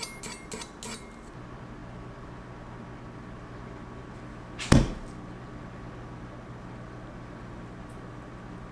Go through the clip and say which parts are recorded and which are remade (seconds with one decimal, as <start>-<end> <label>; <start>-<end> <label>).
0.0-8.7 recorded